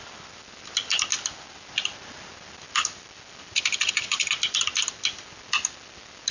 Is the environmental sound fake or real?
real